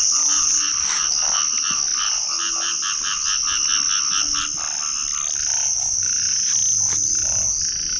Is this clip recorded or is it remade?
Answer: recorded